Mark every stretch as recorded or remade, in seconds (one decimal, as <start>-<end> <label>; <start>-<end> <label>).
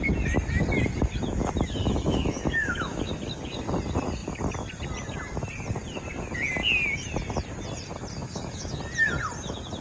0.0-1.8 recorded; 1.8-3.2 remade; 3.2-8.2 recorded; 8.2-8.8 remade; 8.8-9.8 recorded